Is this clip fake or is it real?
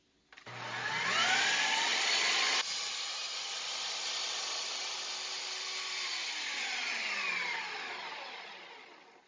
real